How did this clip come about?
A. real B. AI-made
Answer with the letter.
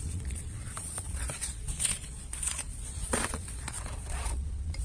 B